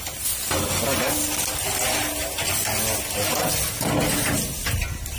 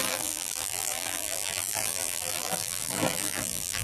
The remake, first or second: second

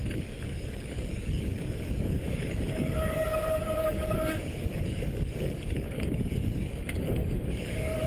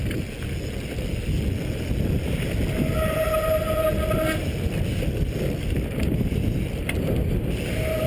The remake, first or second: first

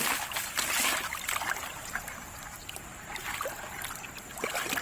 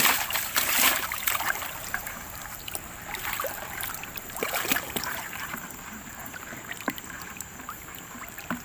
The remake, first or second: second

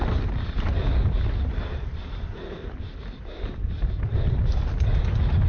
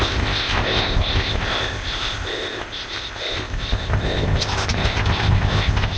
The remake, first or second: second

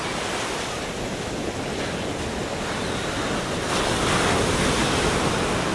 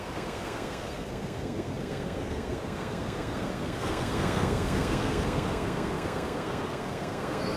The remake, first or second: second